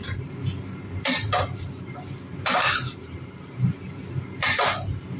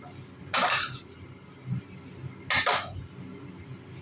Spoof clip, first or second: first